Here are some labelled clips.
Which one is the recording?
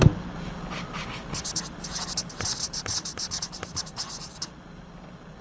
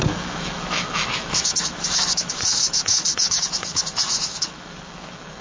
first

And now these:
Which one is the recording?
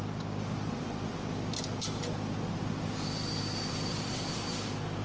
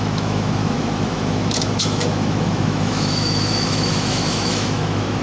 first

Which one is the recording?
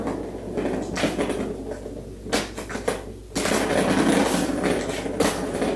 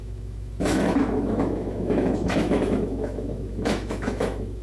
first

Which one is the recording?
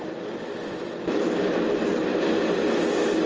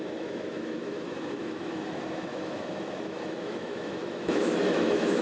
first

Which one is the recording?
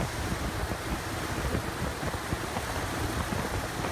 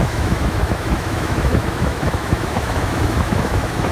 first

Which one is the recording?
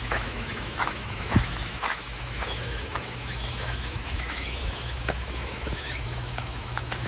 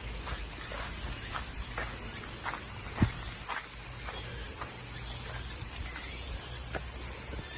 second